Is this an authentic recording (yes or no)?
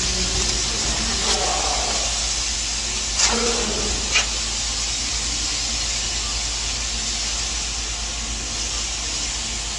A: yes